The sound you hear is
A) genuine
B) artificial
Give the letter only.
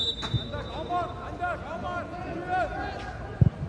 A